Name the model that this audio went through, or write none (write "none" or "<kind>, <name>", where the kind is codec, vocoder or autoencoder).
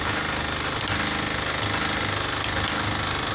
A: none